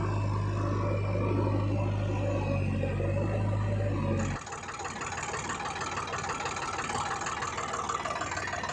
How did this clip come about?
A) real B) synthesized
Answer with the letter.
A